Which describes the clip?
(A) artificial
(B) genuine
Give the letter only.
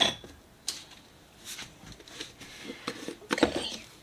B